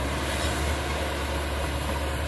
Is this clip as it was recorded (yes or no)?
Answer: yes